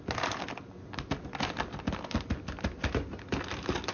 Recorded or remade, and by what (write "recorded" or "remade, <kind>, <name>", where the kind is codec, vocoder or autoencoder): recorded